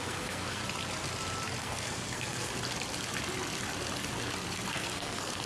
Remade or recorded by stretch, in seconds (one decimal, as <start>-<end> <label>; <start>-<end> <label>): 0.0-0.6 remade; 0.6-1.6 recorded; 1.6-2.5 remade; 2.5-4.7 recorded; 4.7-5.5 remade